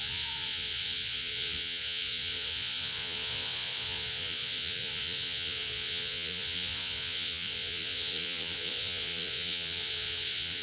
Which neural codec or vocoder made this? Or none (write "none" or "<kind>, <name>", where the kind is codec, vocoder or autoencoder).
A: vocoder, Vocos